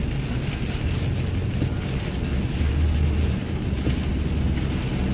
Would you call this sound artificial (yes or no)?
no